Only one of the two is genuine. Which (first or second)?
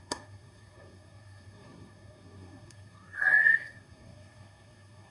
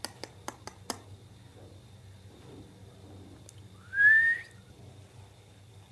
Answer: second